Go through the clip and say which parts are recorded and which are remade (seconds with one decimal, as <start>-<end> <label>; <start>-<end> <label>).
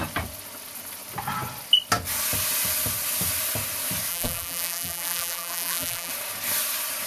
0.0-4.1 recorded; 4.1-6.1 remade; 6.1-7.1 recorded